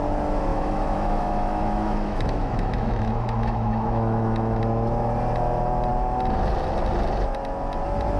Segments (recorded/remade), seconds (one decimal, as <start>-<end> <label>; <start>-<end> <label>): 0.0-0.5 recorded; 0.5-4.6 remade; 4.6-8.2 recorded